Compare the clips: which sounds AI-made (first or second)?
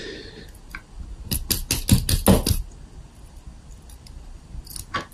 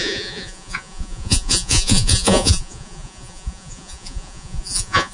second